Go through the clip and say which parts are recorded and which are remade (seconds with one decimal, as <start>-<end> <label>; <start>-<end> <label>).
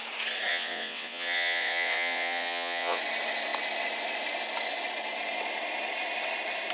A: 0.0-0.5 recorded; 0.5-3.0 remade; 3.0-6.7 recorded